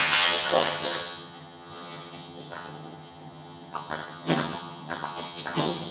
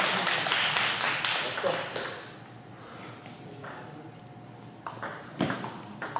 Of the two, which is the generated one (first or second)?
first